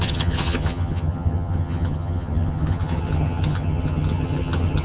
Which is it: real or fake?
fake